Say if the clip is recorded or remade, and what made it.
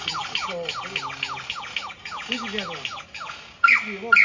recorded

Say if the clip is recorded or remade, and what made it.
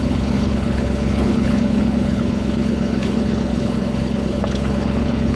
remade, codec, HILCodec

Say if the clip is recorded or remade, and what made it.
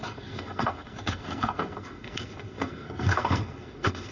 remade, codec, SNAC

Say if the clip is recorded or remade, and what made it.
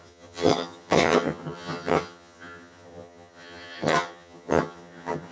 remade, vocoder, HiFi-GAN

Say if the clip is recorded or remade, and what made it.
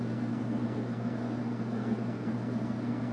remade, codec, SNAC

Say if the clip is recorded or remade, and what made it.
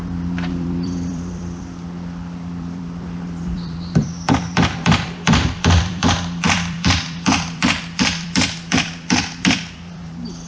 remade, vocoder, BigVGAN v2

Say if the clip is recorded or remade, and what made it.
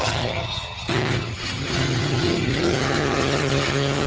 remade, vocoder, HiFi-GAN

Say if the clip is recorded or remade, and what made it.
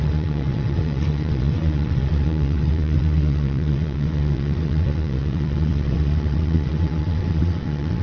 remade, vocoder, WaveNeXt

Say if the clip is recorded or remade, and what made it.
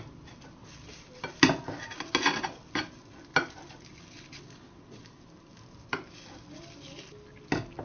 recorded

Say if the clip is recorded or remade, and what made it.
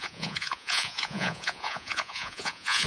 remade, vocoder, Vocos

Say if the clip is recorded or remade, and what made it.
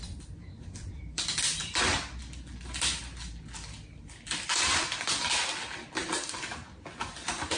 recorded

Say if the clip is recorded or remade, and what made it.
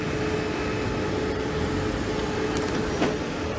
recorded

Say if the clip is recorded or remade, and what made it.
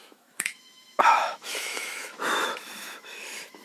remade, autoencoder, DAC-VAE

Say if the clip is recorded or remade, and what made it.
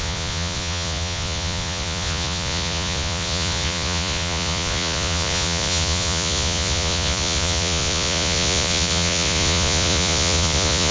remade, vocoder, Vocos